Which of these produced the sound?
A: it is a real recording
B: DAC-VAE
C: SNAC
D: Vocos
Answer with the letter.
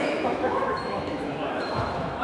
B